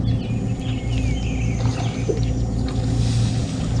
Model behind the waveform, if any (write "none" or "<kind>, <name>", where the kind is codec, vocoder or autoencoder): none